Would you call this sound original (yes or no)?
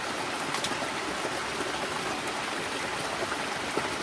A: yes